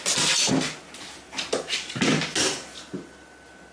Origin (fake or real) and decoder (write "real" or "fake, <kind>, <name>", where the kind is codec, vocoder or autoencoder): real